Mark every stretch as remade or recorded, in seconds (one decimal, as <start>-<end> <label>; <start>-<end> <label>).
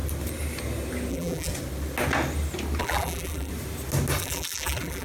0.0-1.1 recorded; 1.1-1.5 remade; 1.5-2.8 recorded; 2.8-3.5 remade; 3.5-4.2 recorded; 4.2-5.0 remade